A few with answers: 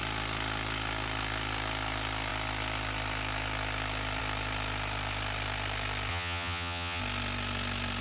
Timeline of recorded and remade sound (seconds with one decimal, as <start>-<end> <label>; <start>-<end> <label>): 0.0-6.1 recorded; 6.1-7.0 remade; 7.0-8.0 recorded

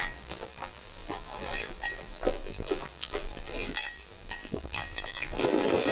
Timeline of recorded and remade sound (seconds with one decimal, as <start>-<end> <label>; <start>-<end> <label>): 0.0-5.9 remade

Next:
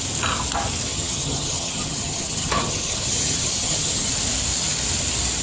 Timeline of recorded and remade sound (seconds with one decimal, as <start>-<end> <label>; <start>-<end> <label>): 0.0-0.9 recorded; 0.9-4.1 remade; 4.1-5.4 recorded

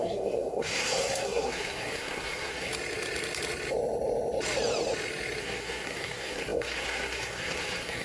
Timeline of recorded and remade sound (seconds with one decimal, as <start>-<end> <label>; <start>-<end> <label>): 0.0-2.7 remade; 2.7-5.4 recorded; 5.4-8.0 remade

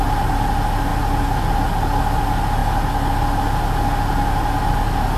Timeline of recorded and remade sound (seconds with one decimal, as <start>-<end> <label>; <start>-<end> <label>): 0.0-5.2 recorded

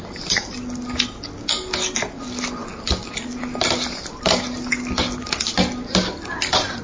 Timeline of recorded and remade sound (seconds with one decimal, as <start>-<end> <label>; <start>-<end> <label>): 0.0-6.8 recorded

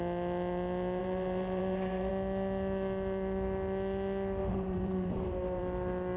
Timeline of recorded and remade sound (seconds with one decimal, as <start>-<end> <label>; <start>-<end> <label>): 0.0-1.0 recorded; 1.0-2.1 remade; 2.1-4.4 recorded; 4.4-5.6 remade; 5.6-6.2 recorded

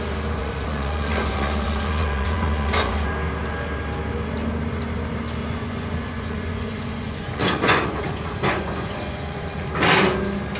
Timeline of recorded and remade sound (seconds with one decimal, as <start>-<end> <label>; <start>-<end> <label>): 0.0-0.4 recorded; 0.4-3.1 remade; 3.1-5.4 recorded; 5.4-9.7 remade; 9.7-10.6 recorded